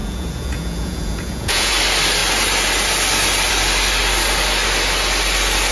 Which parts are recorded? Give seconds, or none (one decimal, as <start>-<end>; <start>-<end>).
1.7-5.7

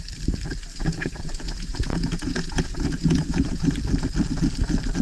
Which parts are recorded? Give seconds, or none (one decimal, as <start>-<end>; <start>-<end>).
0.0-0.7; 3.7-5.0

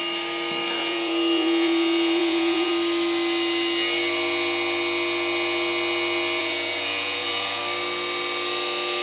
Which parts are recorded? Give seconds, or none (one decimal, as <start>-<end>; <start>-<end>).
0.0-0.8; 2.7-6.4; 7.6-9.0

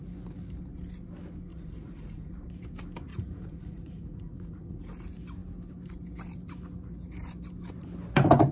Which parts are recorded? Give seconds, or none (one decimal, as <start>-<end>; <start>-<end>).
0.0-1.5; 2.3-3.1; 4.8-8.5

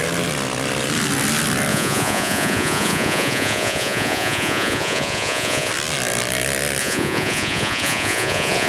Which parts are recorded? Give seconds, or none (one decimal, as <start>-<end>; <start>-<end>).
0.0-1.7; 5.7-6.8

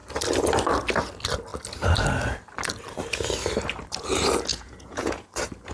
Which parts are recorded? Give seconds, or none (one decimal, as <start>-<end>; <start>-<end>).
0.0-4.5; 5.3-5.7

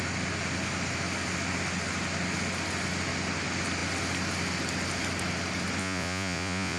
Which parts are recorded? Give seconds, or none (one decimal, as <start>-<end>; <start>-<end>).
0.0-5.8

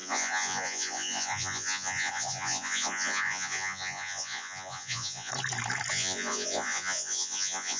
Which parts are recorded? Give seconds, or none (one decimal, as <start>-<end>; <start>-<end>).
5.3-5.9